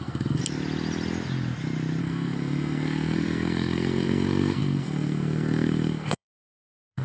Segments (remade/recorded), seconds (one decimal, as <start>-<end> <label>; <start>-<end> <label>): 0.0-0.4 remade; 0.4-2.0 recorded; 2.0-7.0 remade